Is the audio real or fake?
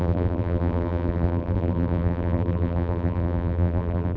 fake